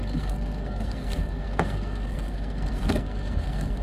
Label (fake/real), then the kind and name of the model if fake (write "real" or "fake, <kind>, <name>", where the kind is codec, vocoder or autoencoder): fake, codec, SNAC